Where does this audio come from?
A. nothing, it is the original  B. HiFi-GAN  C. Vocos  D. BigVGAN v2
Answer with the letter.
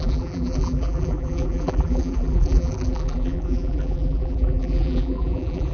D